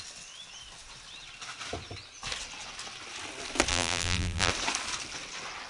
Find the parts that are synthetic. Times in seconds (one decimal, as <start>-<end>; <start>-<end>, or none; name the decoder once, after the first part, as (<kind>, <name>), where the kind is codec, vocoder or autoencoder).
3.7-4.5 (vocoder, BigVGAN v2)